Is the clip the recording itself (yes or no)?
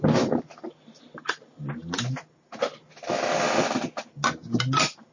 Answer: yes